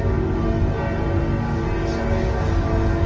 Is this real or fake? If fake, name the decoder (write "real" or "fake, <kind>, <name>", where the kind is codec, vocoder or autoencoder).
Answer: real